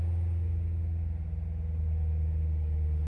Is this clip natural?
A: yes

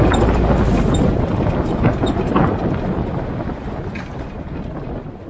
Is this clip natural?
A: yes